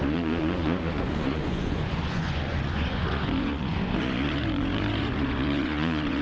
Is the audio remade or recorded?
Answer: remade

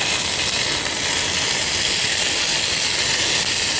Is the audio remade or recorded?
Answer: recorded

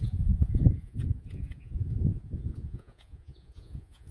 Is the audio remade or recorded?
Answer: remade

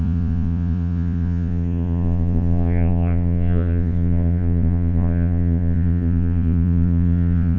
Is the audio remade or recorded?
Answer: remade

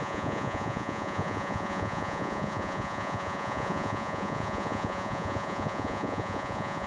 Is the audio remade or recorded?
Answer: remade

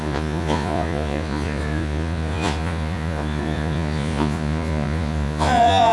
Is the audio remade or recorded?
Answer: remade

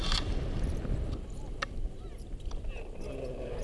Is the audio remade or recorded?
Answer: recorded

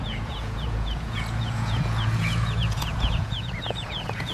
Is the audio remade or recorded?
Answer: remade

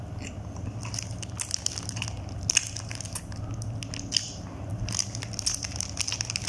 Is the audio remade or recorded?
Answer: recorded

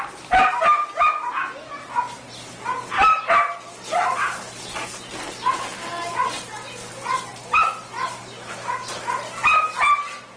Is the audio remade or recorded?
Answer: recorded